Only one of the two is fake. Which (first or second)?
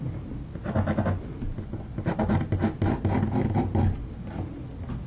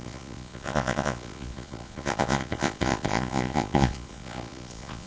second